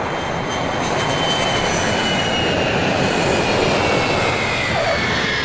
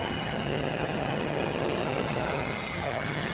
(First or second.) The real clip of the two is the first